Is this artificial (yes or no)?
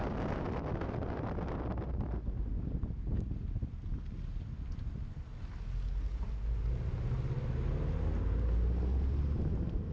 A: no